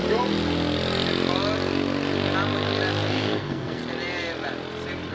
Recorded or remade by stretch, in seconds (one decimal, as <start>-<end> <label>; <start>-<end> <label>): 0.0-3.1 recorded; 3.1-3.8 remade; 3.8-5.1 recorded